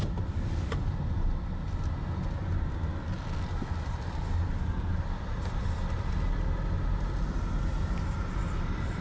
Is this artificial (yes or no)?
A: no